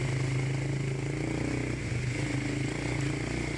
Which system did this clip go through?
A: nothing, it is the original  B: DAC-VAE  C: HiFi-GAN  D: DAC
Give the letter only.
A